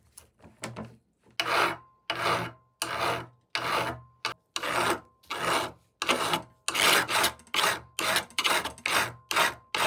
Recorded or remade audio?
recorded